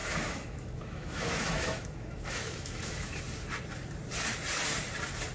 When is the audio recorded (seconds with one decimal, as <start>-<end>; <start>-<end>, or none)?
3.2-5.3